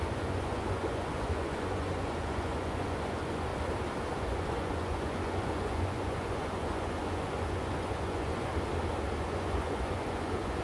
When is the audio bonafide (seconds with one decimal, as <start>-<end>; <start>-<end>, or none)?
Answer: 3.5-4.2; 8.5-9.2